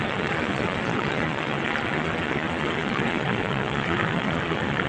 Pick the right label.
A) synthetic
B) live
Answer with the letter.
A